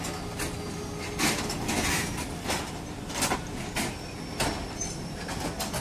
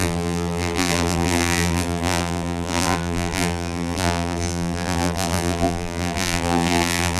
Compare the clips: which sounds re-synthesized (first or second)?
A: second